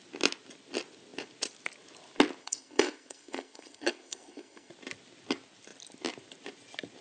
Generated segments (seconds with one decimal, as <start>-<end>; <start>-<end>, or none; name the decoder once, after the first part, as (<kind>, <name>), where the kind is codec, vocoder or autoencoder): 2.4-4.7 (codec, SNAC)